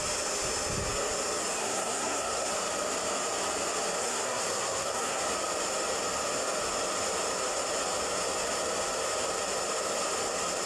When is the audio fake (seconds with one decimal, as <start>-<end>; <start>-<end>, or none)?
1.6-2.5; 4.0-5.2